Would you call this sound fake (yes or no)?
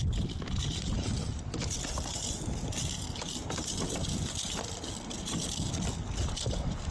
no